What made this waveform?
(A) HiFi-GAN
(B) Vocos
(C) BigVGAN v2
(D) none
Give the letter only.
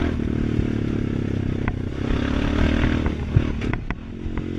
D